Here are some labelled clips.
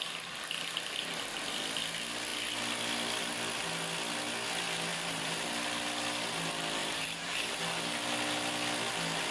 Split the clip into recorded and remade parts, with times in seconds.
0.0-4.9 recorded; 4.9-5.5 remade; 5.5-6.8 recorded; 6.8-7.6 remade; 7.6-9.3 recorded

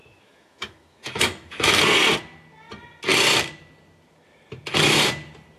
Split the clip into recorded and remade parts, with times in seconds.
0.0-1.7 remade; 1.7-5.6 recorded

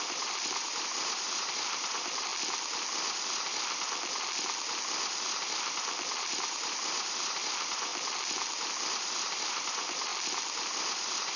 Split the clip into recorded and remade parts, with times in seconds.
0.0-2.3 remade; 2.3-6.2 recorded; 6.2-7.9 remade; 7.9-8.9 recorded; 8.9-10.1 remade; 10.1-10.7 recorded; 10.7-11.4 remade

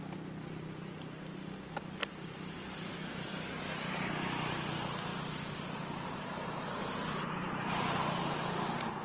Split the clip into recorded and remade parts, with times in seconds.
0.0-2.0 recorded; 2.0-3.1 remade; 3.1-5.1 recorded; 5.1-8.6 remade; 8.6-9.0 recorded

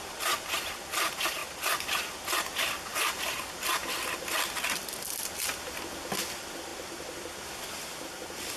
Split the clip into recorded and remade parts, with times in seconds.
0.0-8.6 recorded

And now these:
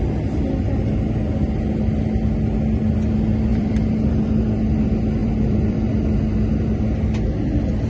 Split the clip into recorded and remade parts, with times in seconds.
0.0-3.5 recorded; 3.5-4.2 remade; 4.2-5.2 recorded; 5.2-5.9 remade; 5.9-7.9 recorded